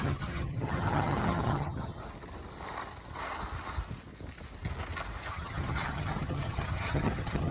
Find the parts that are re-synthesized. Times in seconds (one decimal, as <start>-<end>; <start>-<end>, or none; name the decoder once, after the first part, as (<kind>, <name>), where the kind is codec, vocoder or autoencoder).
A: 0.0-2.0 (vocoder, HiFi-GAN); 5.3-7.5